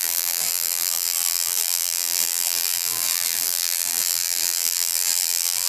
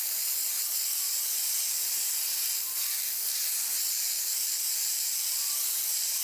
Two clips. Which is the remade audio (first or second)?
first